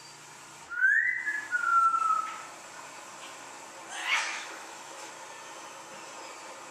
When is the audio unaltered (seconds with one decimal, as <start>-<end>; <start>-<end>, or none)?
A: 0.0-4.0; 5.1-6.7